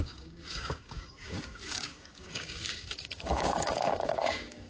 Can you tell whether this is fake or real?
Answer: fake